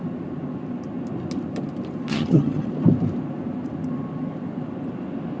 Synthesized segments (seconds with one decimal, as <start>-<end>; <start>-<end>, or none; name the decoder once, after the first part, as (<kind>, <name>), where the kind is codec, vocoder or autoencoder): 2.1-2.7 (vocoder, HiFi-GAN)

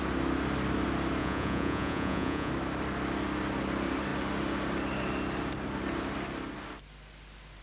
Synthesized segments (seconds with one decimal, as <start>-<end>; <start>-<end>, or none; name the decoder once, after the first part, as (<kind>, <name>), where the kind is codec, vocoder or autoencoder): 1.2-2.5 (vocoder, Vocos)

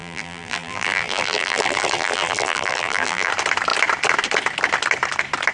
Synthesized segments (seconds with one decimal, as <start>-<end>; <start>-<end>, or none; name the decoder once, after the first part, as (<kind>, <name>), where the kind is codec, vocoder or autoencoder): 0.0-3.3 (vocoder, BigVGAN v2)